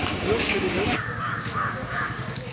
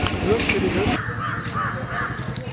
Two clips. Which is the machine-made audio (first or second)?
first